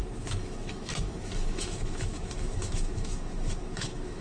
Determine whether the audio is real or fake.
fake